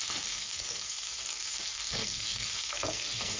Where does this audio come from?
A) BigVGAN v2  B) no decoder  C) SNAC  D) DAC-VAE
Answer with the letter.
C